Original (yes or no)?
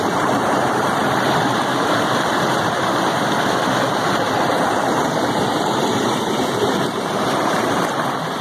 no